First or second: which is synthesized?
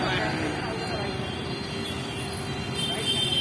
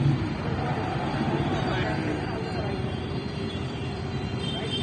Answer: second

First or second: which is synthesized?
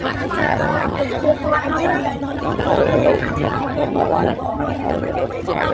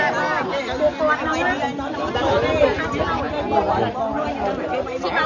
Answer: first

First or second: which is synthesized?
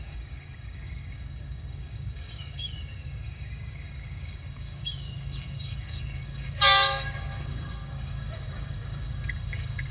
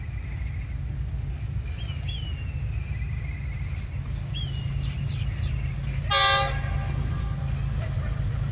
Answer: first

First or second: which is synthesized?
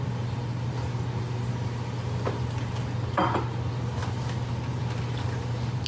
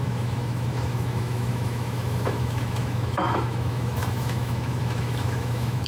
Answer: second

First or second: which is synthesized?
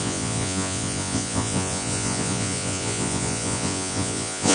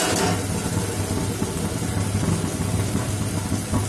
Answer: first